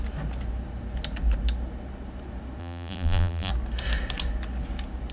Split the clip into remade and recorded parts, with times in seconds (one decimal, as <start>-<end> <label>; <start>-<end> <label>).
0.0-2.6 recorded; 2.6-3.5 remade; 3.5-5.1 recorded